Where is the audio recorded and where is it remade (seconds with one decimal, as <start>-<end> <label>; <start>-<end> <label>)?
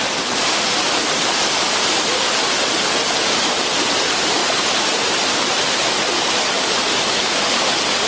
0.0-4.4 recorded; 4.4-5.8 remade; 5.8-8.1 recorded